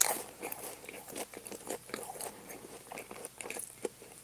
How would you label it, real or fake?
fake